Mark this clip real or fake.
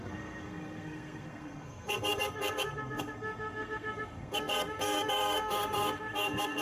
fake